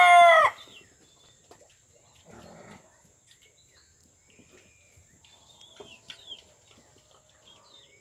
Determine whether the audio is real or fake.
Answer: real